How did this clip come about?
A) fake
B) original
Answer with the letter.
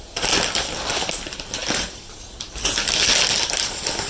B